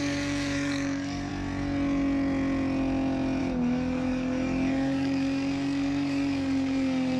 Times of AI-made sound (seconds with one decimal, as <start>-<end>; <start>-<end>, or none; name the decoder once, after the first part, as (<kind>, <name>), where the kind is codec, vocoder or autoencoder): 0.0-1.3 (codec, DAC); 3.4-7.2